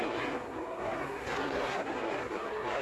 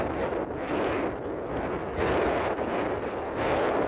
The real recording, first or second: second